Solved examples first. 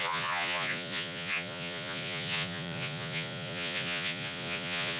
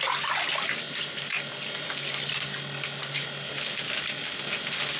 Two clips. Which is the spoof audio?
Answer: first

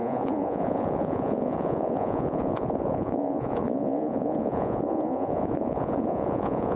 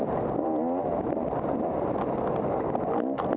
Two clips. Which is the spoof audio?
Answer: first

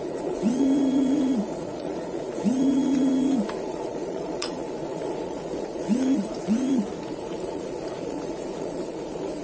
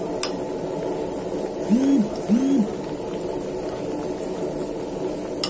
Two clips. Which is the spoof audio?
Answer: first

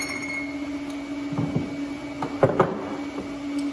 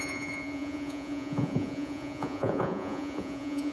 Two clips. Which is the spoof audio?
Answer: second